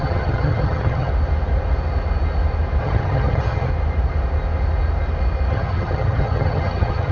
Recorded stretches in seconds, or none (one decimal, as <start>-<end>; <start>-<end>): 1.1-2.8; 3.7-5.5